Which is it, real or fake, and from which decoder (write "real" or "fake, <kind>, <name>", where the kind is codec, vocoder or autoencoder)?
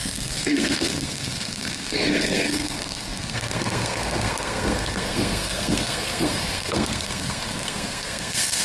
fake, codec, SNAC